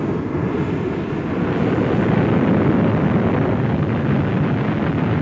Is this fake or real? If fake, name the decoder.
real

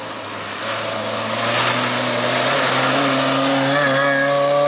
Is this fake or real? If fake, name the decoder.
real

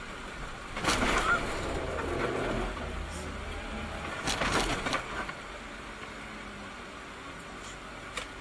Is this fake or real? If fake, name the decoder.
real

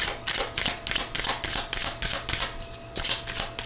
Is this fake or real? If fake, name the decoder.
real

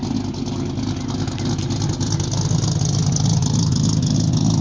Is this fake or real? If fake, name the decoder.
real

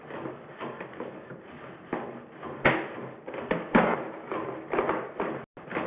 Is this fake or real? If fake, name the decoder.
real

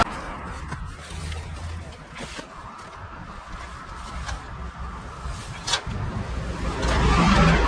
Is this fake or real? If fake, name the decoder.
real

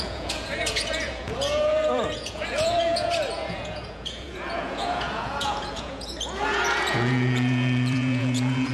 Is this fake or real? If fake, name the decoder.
fake, vocoder, Vocos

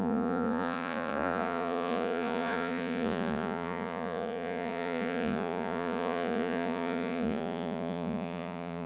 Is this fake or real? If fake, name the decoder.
fake, vocoder, Vocos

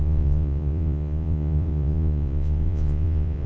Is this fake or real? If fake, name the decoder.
fake, vocoder, Vocos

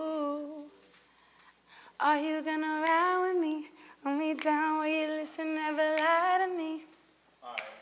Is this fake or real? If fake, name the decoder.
real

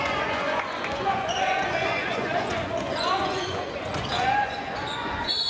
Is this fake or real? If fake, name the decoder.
fake, vocoder, Vocos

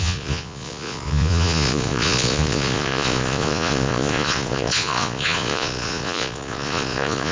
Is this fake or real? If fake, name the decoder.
fake, vocoder, Vocos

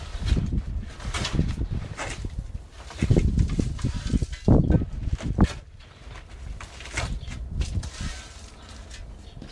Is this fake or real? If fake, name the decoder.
real